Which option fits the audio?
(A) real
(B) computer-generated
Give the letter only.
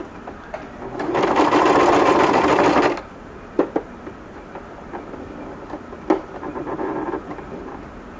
A